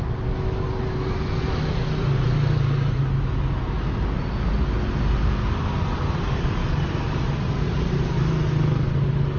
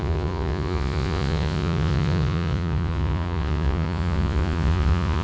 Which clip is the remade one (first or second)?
second